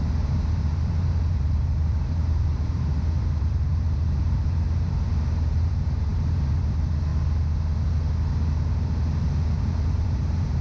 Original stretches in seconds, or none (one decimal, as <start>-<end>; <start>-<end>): 7.1-9.6